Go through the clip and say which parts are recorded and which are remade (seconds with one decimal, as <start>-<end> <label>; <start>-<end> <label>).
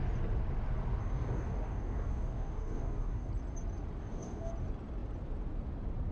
0.0-1.0 recorded; 1.0-3.3 remade; 3.3-4.0 recorded; 4.0-4.5 remade; 4.5-6.1 recorded